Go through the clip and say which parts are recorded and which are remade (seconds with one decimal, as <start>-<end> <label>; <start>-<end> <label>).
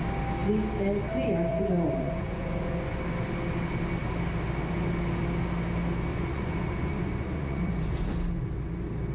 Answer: 0.0-1.5 recorded; 1.5-3.0 remade; 3.0-6.1 recorded; 6.1-7.9 remade; 7.9-9.1 recorded